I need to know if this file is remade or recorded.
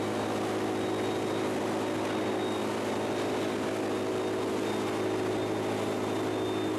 recorded